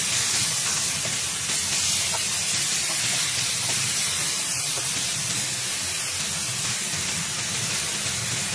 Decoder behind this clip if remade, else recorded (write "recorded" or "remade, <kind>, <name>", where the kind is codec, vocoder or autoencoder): recorded